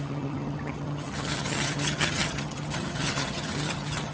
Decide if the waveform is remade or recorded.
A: remade